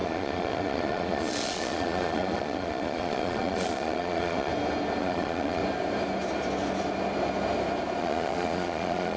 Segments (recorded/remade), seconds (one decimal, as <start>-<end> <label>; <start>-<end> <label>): 0.0-4.5 remade; 4.5-5.0 recorded; 5.0-5.6 remade; 5.6-8.0 recorded; 8.0-9.2 remade